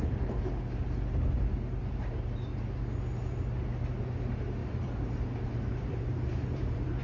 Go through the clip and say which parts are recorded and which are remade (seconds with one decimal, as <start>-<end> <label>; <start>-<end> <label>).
0.0-1.8 recorded; 1.8-2.6 remade; 2.6-4.6 recorded; 4.6-7.0 remade